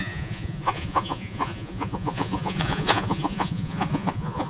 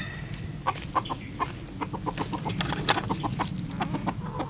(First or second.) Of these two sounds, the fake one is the first